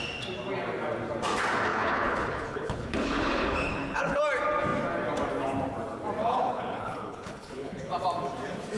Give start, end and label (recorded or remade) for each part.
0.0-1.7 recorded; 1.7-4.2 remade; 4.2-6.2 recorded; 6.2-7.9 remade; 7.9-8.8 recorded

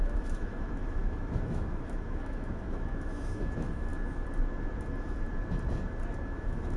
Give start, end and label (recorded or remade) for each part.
0.0-3.9 remade; 3.9-6.2 recorded; 6.2-6.8 remade

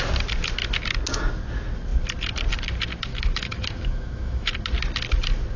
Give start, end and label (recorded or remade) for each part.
0.0-3.1 recorded; 3.1-4.5 remade; 4.5-5.6 recorded

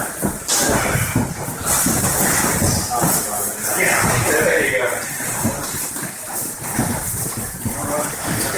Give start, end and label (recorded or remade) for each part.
0.0-2.4 recorded; 2.4-7.3 remade; 7.3-8.6 recorded

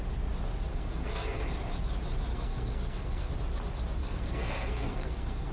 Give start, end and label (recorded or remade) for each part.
0.0-0.7 recorded; 0.7-1.4 remade; 1.4-2.3 recorded; 2.3-3.3 remade; 3.3-4.0 recorded; 4.0-5.5 remade